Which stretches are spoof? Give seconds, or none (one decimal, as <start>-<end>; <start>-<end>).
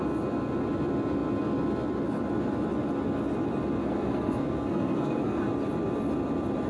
3.8-5.4